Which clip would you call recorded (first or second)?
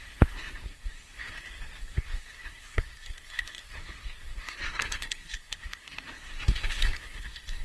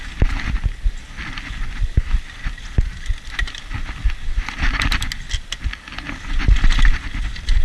second